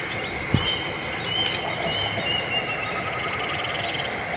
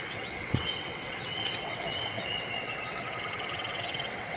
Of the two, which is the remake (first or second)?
second